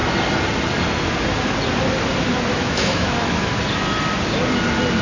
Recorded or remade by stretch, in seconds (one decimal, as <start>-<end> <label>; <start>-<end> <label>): 0.0-2.5 recorded; 2.5-3.5 remade; 3.5-5.0 recorded